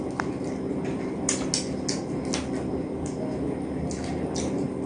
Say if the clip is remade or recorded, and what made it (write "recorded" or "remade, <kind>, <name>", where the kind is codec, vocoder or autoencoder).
recorded